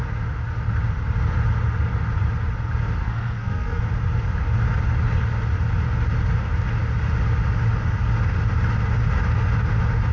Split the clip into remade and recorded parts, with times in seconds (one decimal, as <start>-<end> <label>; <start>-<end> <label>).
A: 0.0-3.0 recorded; 3.0-3.8 remade; 3.8-10.1 recorded